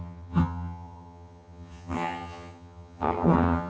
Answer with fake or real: fake